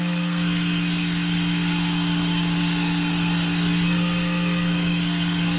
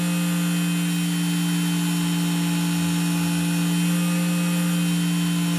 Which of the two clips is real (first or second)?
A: second